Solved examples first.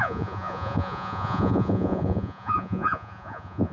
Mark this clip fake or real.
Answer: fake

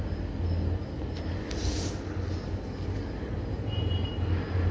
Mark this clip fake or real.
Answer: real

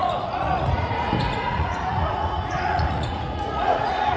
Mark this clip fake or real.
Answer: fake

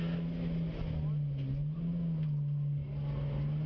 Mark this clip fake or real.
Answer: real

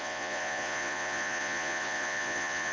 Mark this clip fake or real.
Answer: fake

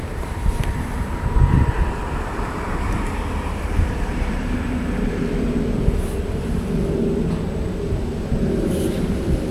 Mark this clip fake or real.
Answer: fake